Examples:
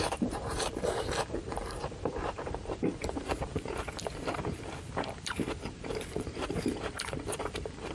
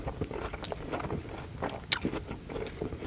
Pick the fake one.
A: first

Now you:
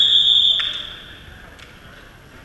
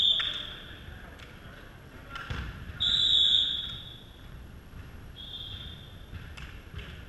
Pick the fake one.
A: second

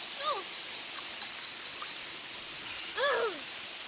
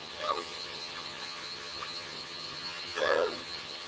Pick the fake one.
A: second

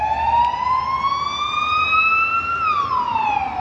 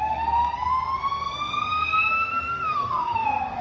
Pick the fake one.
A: second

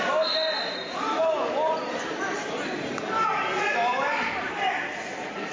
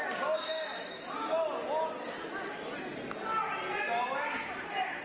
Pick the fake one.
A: first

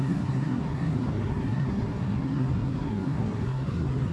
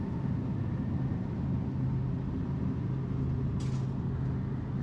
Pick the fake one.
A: first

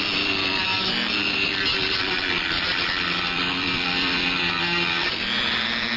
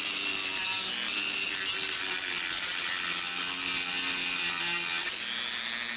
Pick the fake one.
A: first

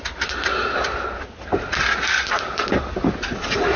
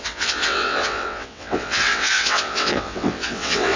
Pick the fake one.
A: second